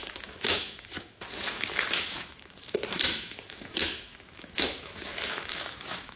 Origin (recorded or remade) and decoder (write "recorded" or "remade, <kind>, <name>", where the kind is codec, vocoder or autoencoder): remade, autoencoder, DAC-VAE